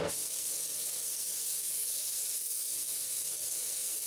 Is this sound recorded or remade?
remade